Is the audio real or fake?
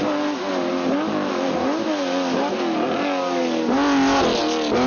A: real